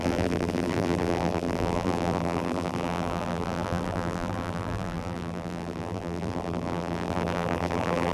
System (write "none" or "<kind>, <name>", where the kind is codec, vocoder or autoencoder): vocoder, BigVGAN v2